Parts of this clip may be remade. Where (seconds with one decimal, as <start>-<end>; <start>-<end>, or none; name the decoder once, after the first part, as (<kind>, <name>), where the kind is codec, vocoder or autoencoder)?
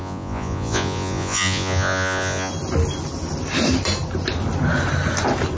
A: 0.0-2.5 (vocoder, Vocos)